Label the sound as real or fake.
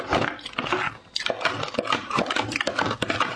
real